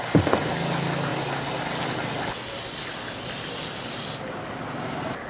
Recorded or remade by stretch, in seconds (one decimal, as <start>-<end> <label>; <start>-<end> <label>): 0.0-5.3 recorded